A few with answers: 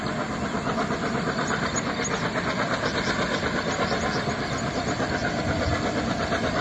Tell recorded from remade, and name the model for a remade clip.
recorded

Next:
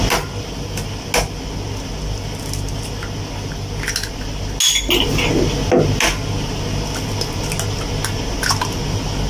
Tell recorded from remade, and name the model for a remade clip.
recorded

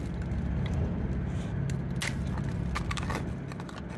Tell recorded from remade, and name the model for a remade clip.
recorded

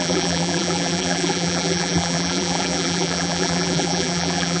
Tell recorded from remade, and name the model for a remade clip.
remade, vocoder, BigVGAN v2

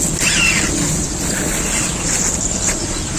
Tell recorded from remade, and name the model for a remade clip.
recorded